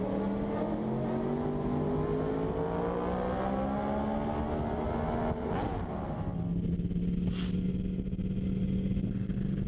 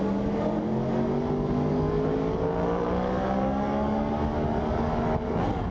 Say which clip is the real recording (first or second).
first